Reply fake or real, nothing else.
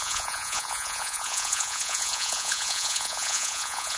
fake